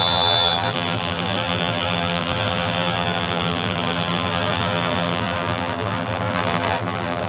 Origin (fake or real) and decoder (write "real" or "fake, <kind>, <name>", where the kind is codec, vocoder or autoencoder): fake, vocoder, BigVGAN v2